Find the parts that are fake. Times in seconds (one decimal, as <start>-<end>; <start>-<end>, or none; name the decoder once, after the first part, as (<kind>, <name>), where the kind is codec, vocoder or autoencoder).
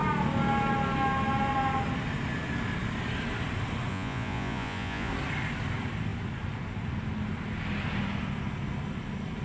3.9-5.1 (vocoder, Vocos)